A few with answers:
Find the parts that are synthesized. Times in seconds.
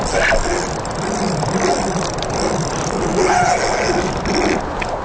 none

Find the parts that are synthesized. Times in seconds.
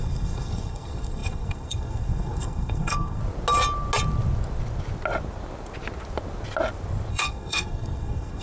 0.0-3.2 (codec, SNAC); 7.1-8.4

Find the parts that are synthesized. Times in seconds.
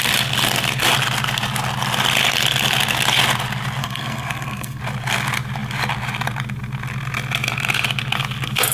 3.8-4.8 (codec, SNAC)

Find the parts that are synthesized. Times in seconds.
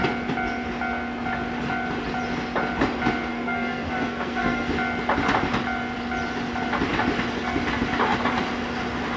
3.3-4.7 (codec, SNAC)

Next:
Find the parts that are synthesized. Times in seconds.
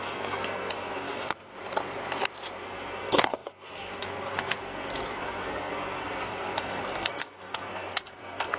0.0-1.5 (codec, SNAC); 2.6-8.6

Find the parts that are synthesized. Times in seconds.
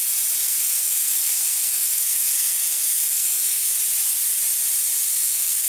0.4-3.8 (codec, SNAC); 5.1-5.7